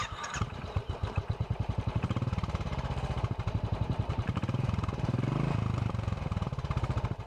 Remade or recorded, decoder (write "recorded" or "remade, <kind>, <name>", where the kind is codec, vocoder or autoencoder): remade, vocoder, BigVGAN v2